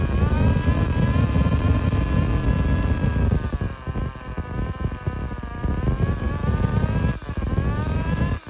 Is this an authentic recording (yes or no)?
yes